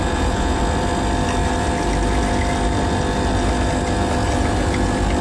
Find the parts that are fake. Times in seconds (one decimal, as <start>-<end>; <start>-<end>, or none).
0.0-0.6